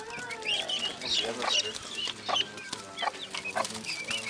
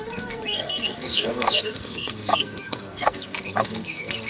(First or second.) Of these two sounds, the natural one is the first